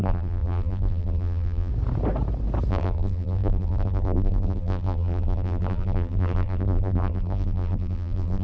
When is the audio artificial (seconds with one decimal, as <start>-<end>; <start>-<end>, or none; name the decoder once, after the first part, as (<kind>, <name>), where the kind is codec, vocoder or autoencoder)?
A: 0.0-1.7 (vocoder, BigVGAN v2); 2.7-8.4